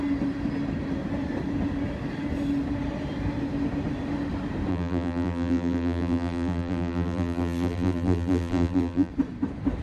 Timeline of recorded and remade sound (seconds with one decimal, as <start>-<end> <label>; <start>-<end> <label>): 0.0-4.7 recorded; 4.7-9.1 remade; 9.1-9.8 recorded